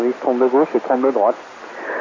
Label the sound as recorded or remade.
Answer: recorded